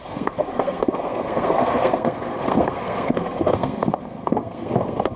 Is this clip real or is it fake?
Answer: fake